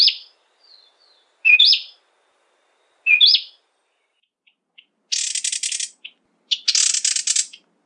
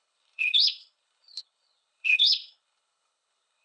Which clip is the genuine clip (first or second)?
first